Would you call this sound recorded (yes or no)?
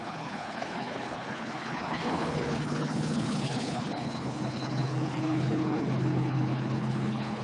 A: no